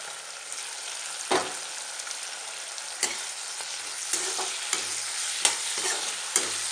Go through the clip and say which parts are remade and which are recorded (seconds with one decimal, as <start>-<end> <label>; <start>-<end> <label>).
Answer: 0.0-6.7 recorded